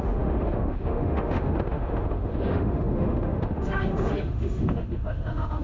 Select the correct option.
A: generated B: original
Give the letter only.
A